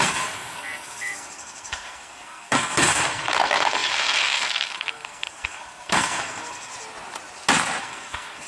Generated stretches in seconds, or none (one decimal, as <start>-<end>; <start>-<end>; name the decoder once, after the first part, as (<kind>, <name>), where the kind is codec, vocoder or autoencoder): 0.0-6.7 (codec, SNAC); 7.8-8.5